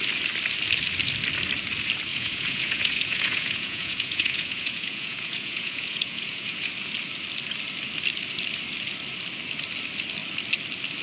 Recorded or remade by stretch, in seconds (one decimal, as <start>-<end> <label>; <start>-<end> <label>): 0.0-2.1 recorded; 2.1-6.7 remade; 6.7-11.0 recorded